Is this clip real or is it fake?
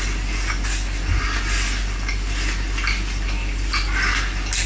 real